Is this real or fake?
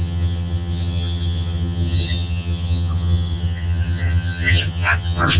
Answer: fake